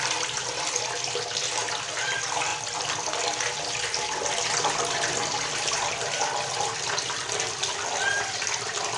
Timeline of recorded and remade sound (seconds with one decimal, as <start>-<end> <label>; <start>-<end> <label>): 0.0-9.0 recorded